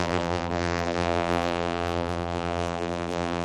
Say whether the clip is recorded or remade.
remade